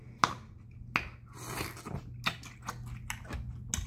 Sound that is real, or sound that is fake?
real